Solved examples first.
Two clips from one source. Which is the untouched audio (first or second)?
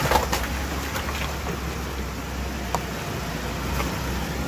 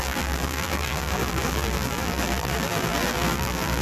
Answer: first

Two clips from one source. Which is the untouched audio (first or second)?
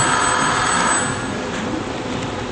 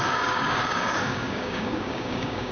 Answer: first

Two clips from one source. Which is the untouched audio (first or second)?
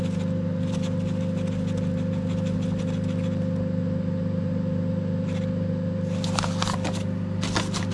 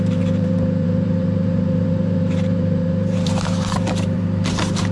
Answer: first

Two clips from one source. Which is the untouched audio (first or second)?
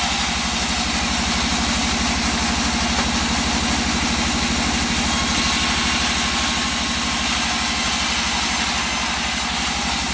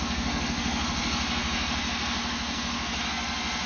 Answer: first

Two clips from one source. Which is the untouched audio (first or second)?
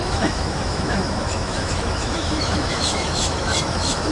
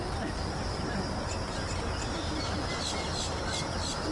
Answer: second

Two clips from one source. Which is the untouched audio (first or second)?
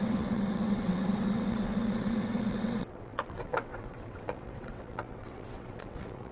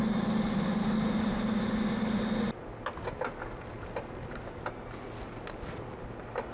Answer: second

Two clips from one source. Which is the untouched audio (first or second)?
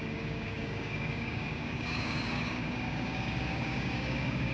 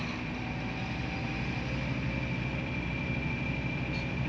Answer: second